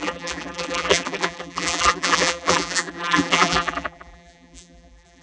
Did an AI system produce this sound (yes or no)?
yes